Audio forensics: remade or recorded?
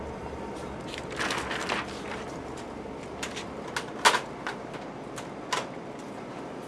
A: recorded